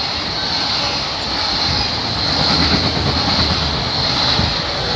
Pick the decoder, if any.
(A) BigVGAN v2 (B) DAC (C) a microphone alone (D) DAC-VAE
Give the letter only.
C